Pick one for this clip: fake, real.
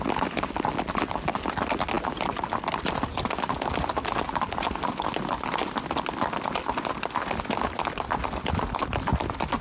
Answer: real